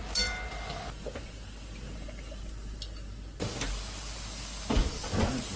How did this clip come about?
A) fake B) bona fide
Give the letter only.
B